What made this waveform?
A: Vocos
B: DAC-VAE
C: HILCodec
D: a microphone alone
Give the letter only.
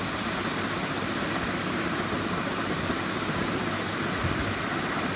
D